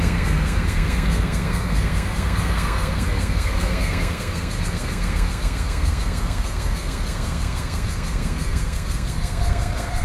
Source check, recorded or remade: remade